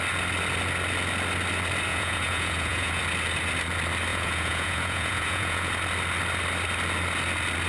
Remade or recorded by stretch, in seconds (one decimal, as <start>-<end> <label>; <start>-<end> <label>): 0.0-1.9 recorded; 1.9-3.0 remade; 3.0-4.1 recorded; 4.1-5.7 remade; 5.7-7.7 recorded